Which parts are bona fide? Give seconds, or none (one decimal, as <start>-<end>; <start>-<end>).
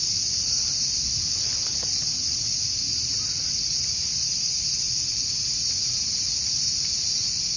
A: 0.0-7.6